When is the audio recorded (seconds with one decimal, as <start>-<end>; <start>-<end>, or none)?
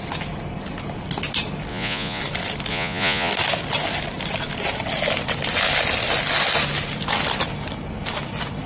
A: 0.0-1.7; 2.2-2.7; 3.3-8.7